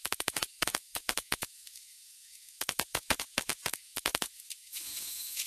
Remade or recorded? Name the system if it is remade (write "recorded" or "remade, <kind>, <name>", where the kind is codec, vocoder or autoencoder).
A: remade, autoencoder, DAC-VAE